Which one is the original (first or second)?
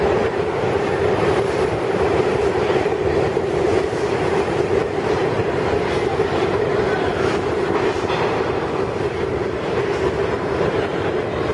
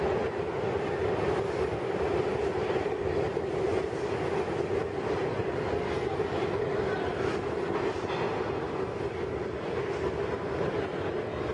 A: second